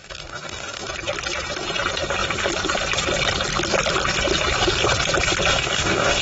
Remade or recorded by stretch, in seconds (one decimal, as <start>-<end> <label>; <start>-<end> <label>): 0.0-0.9 remade; 0.9-5.5 recorded; 5.5-6.2 remade